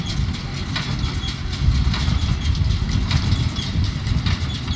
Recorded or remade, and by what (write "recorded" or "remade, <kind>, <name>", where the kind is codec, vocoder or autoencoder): recorded